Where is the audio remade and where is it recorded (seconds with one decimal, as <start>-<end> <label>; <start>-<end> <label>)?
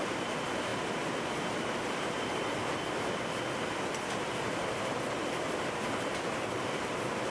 0.0-7.3 remade